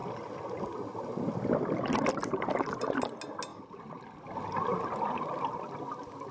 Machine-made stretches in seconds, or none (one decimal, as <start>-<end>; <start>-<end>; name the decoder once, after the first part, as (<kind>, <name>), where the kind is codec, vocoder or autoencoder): none